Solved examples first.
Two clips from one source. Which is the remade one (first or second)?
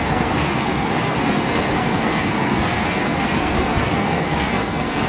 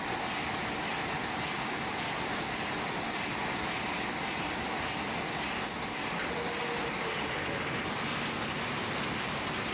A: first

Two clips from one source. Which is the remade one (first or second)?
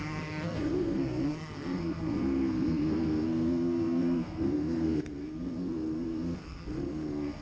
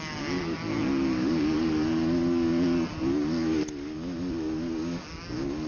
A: first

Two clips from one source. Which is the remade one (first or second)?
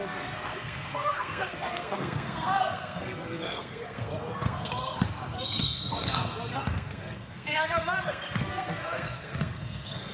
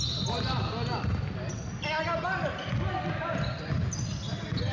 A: first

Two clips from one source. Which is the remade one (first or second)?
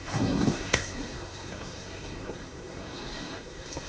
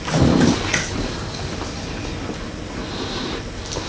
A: first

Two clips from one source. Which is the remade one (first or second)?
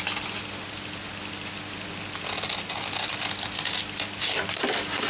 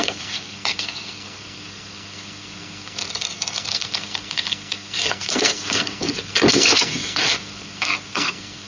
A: second